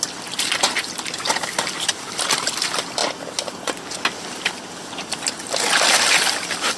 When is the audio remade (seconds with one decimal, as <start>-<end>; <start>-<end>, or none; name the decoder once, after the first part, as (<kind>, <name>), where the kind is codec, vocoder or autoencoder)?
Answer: none